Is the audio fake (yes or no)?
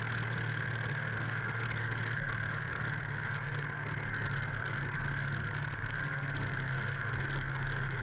yes